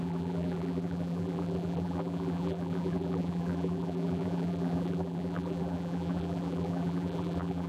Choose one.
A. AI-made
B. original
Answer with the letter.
A